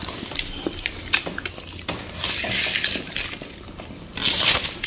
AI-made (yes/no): no